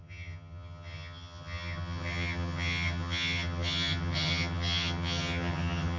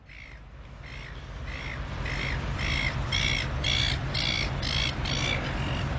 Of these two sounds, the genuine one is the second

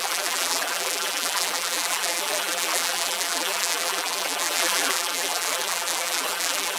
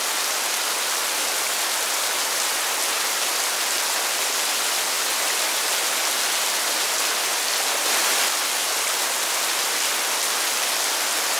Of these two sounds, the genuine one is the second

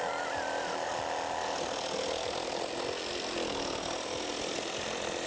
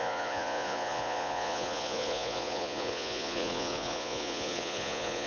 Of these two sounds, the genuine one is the first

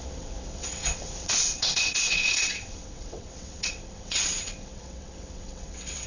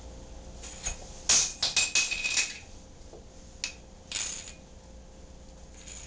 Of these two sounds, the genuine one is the second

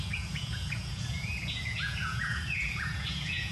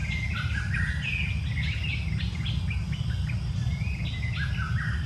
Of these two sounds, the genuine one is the second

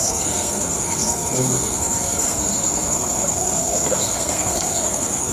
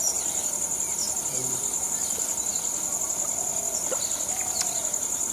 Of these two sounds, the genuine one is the second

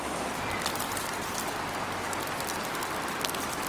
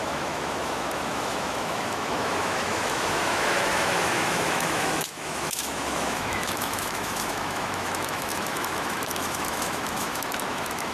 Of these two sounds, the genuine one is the first